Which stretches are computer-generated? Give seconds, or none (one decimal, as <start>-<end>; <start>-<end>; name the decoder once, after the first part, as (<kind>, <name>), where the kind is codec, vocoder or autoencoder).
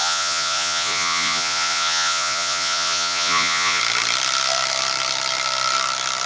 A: 0.0-3.8 (vocoder, Vocos)